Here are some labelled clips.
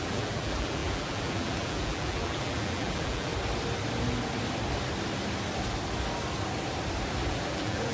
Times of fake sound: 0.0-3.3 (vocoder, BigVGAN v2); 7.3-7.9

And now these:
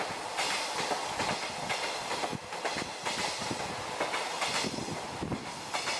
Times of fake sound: none

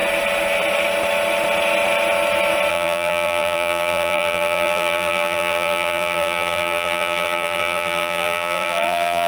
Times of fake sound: 2.7-9.3 (vocoder, BigVGAN v2)

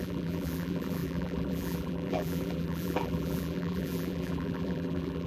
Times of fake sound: 0.0-5.3 (vocoder, BigVGAN v2)

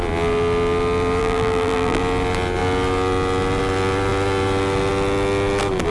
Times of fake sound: 1.2-2.0 (vocoder, BigVGAN v2)